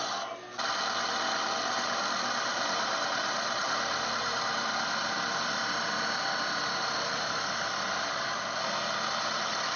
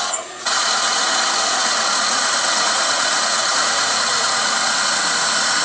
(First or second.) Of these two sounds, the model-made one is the second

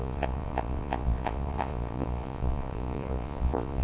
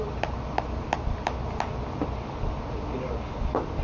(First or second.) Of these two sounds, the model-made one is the first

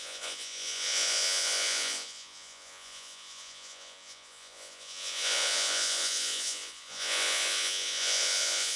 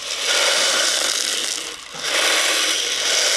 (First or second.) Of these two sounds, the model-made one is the first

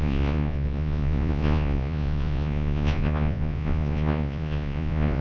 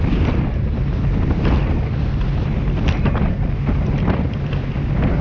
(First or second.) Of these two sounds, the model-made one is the first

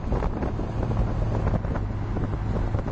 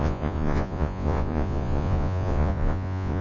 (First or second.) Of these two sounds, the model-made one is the second